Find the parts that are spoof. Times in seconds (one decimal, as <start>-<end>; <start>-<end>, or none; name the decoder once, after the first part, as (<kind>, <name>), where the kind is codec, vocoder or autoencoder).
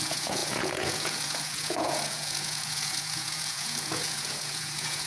0.0-5.1 (vocoder, Vocos)